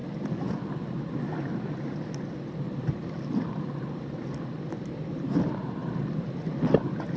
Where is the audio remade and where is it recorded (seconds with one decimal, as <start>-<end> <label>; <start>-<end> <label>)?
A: 0.0-7.2 recorded